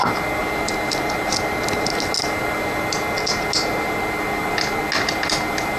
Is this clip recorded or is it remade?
recorded